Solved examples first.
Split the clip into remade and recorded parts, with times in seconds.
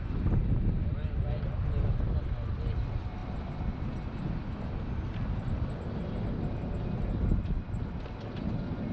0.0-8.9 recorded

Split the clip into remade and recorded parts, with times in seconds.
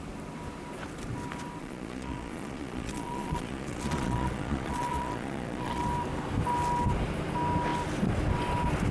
0.0-1.6 recorded; 1.6-5.8 remade; 5.8-8.9 recorded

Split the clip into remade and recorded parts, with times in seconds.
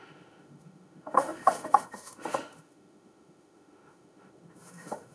0.0-5.1 remade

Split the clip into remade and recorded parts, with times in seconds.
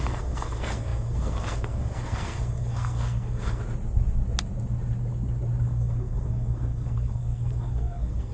0.0-3.6 remade; 3.6-5.6 recorded; 5.6-8.3 remade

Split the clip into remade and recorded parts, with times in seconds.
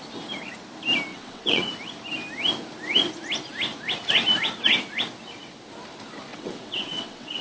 0.0-1.1 recorded; 1.1-1.7 remade; 1.7-6.3 recorded; 6.3-7.4 remade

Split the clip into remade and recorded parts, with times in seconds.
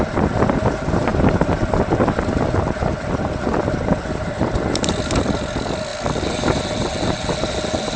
0.0-8.0 recorded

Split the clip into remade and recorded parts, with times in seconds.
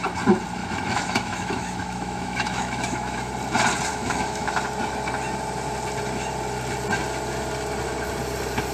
0.0-0.6 recorded; 0.6-3.3 remade; 3.3-3.9 recorded; 3.9-4.5 remade; 4.5-8.7 recorded